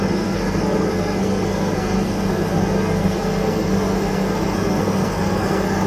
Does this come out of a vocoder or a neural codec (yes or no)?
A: yes